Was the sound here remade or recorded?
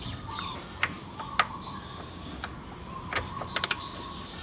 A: recorded